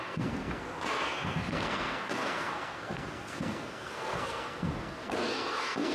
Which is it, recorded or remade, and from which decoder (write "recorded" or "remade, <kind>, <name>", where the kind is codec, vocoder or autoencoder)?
remade, codec, SNAC